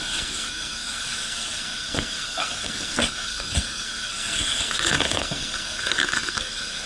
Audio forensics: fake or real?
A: fake